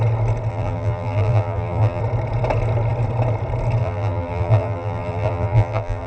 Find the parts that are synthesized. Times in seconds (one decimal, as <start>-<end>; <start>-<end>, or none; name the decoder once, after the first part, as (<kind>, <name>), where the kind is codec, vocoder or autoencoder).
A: 0.5-2.0 (vocoder, BigVGAN v2); 3.8-6.1